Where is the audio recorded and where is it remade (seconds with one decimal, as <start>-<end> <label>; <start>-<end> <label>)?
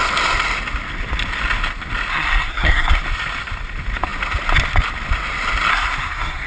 0.0-2.1 recorded; 2.1-3.0 remade; 3.0-5.7 recorded; 5.7-6.5 remade